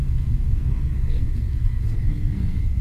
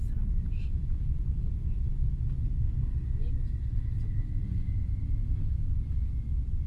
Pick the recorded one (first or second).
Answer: second